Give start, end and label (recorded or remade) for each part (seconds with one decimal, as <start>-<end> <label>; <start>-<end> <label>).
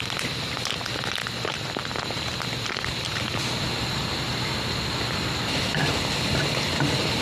0.0-7.2 recorded